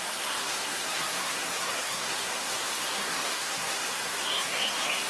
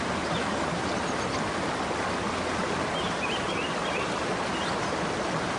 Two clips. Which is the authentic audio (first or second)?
second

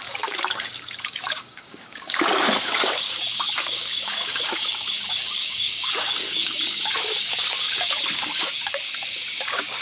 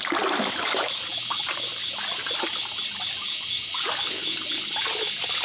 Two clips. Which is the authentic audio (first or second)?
second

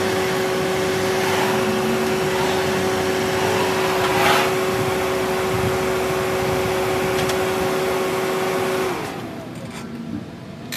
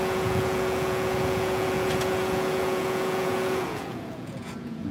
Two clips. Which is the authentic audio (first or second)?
first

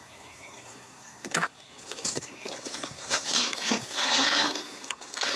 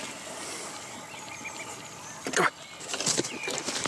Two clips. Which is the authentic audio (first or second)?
second